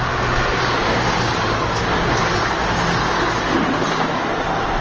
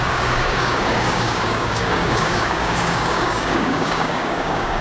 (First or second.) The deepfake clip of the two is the second